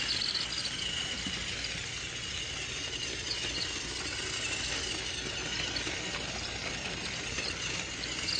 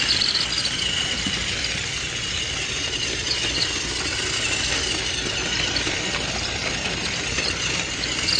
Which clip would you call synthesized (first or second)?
second